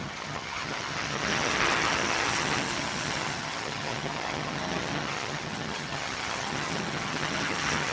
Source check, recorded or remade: remade